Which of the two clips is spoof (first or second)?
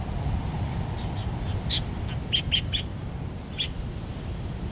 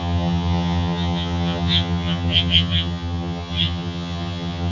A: second